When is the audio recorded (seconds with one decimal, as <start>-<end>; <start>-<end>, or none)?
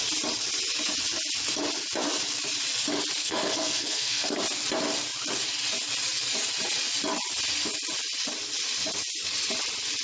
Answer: 0.0-3.2; 4.4-10.0